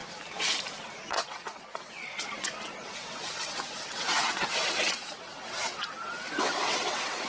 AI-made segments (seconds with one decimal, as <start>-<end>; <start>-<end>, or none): 1.0-7.3